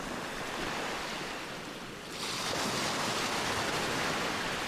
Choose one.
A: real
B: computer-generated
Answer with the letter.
A